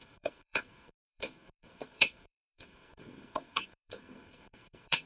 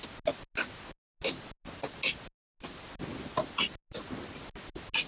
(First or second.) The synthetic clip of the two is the first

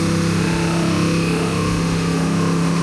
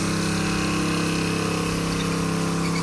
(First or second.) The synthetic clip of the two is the first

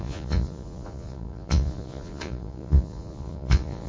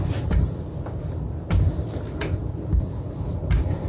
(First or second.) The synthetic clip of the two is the first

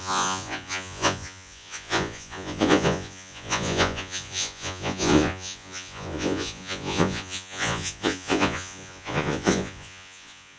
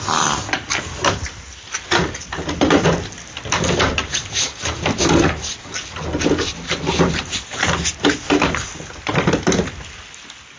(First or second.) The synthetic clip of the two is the first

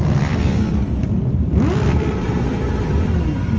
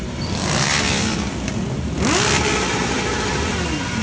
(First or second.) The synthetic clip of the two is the first